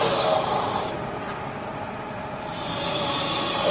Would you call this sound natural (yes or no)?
yes